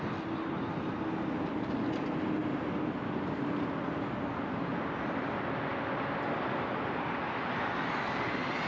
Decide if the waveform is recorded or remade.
recorded